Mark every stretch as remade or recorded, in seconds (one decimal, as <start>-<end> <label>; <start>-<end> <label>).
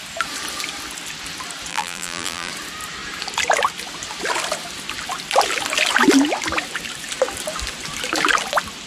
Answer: 0.0-1.7 recorded; 1.7-2.5 remade; 2.5-8.9 recorded